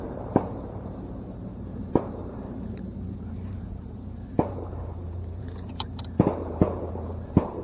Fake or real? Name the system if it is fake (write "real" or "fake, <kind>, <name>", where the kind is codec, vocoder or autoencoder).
fake, vocoder, BigVGAN v2